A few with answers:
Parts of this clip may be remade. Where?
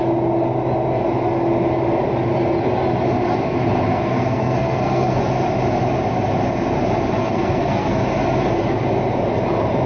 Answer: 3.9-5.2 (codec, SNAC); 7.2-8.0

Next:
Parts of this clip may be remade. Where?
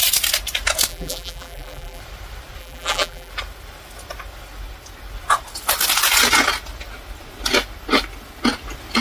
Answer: 0.9-2.0 (vocoder, BigVGAN v2); 2.6-3.3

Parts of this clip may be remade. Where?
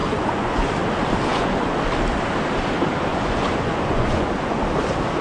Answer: 0.0-0.7 (vocoder, Vocos); 1.3-1.8; 3.1-4.6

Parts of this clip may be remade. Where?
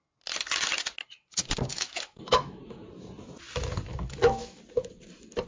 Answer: 1.7-2.6 (autoencoder, DAC-VAE); 3.9-4.6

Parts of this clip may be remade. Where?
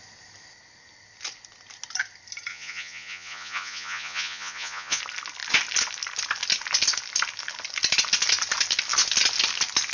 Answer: 2.5-5.0 (vocoder, Vocos)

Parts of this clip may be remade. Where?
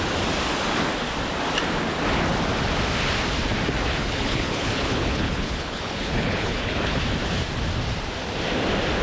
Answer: 4.0-7.0 (codec, HILCodec)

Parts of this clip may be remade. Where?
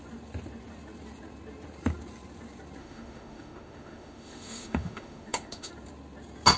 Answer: 2.8-5.7 (autoencoder, DAC-VAE)